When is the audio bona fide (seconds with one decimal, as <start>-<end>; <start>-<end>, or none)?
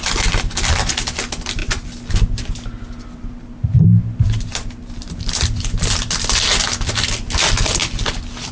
0.0-8.5